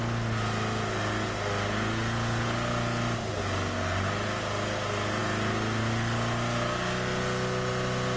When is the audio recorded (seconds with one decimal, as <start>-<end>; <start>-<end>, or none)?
0.0-8.2